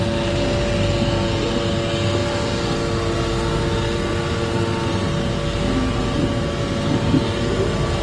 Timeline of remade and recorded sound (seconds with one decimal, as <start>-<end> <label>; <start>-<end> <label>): 0.0-8.0 recorded